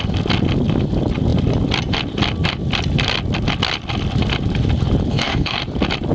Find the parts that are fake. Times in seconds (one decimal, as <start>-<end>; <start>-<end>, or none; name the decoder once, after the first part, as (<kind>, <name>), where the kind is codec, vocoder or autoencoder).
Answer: 5.1-5.6 (codec, DAC)